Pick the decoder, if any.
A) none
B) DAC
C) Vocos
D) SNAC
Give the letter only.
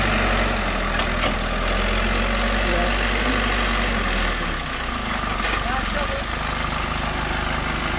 A